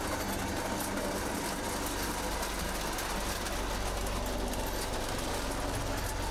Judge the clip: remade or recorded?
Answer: recorded